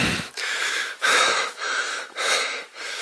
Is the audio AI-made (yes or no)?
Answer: yes